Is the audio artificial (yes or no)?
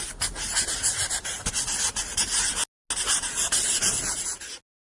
no